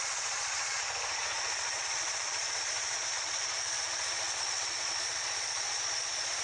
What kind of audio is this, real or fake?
fake